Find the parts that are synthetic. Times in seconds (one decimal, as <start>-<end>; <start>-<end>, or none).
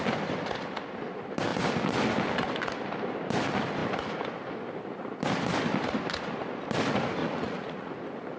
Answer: 7.2-7.9